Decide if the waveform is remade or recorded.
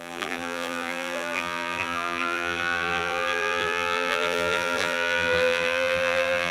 remade